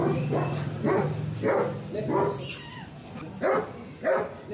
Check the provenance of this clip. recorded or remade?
recorded